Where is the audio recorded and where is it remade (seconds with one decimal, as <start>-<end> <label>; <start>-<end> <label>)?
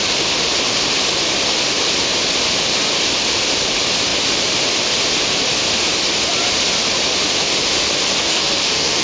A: 0.0-8.3 recorded; 8.3-9.0 remade